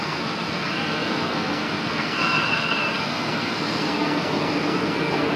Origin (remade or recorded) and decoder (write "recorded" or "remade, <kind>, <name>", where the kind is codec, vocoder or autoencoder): remade, codec, SNAC